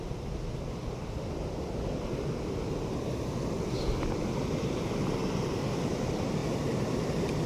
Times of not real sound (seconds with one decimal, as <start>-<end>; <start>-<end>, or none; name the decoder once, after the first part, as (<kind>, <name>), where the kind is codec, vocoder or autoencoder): none